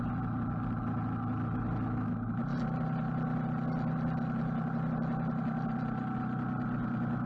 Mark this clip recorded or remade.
recorded